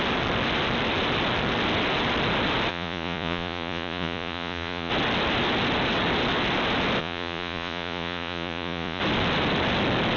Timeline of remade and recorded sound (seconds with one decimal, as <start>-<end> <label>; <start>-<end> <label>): 0.0-2.7 recorded; 2.7-4.9 remade; 4.9-7.0 recorded; 7.0-9.0 remade; 9.0-10.2 recorded